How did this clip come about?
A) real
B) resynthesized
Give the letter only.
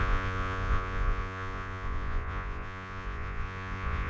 B